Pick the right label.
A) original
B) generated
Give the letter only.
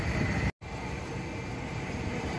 A